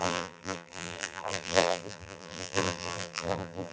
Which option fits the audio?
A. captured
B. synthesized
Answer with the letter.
B